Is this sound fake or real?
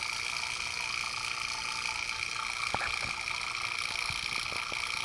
real